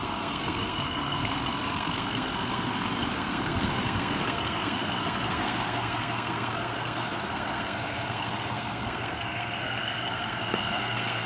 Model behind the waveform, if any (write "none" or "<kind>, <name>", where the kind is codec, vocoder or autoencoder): codec, SNAC